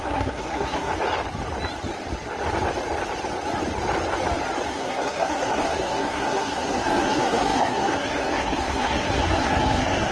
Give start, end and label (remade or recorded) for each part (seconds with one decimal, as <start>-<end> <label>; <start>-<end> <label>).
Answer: 0.0-0.9 remade; 0.9-4.7 recorded; 4.7-10.1 remade

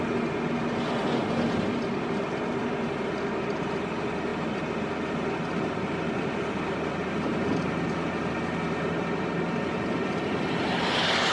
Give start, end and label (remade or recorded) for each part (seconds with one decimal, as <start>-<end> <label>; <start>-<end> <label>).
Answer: 0.0-11.3 recorded

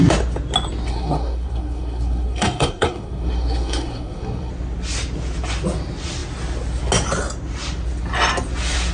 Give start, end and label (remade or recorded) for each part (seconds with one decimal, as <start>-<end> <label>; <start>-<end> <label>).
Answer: 0.0-0.9 recorded; 0.9-4.5 remade; 4.5-8.9 recorded

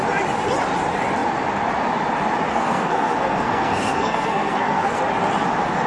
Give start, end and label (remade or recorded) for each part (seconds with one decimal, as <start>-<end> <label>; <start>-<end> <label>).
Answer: 0.0-2.5 recorded; 2.5-5.0 remade; 5.0-5.9 recorded

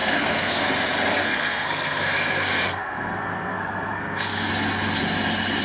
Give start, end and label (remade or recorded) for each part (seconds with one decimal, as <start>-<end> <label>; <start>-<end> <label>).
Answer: 0.0-0.6 remade; 0.6-1.1 recorded; 1.1-4.5 remade; 4.5-5.6 recorded

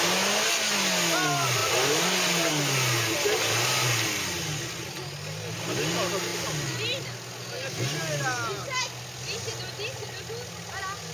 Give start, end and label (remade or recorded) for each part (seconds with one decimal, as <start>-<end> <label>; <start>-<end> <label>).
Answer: 0.0-11.1 recorded

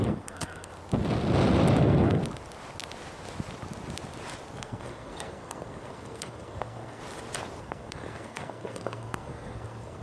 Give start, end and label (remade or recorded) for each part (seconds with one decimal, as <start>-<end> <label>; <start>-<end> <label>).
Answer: 0.0-0.7 remade; 0.7-1.8 recorded; 1.8-2.2 remade; 2.2-4.6 recorded; 4.6-7.0 remade; 7.0-7.6 recorded; 7.6-10.0 remade

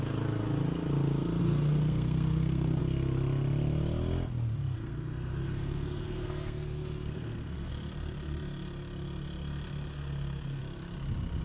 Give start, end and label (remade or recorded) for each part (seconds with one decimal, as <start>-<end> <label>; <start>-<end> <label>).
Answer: 0.0-1.4 recorded; 1.4-2.8 remade; 2.8-4.8 recorded; 4.8-7.7 remade; 7.7-9.9 recorded; 9.9-10.6 remade; 10.6-11.4 recorded